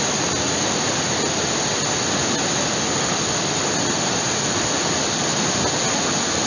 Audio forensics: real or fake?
real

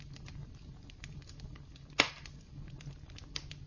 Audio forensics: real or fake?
real